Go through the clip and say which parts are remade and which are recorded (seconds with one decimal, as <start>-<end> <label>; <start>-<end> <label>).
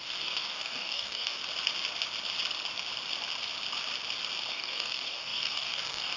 0.0-1.4 remade; 1.4-4.5 recorded; 4.5-6.2 remade